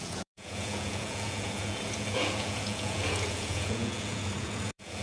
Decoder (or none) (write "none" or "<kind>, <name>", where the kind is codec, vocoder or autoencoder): vocoder, Vocos